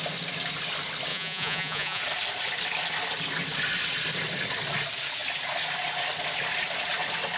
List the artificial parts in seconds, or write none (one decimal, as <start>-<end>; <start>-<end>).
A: 1.1-2.0